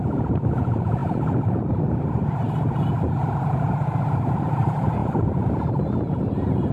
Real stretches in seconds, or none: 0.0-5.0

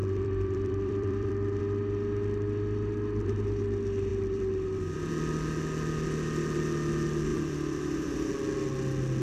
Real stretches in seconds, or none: 1.6-4.1; 5.1-7.3; 8.3-9.2

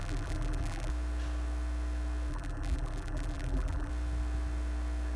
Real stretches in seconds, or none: 0.9-2.3; 3.9-5.2

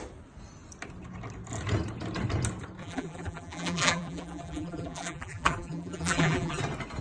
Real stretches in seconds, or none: 0.0-2.8; 6.6-7.0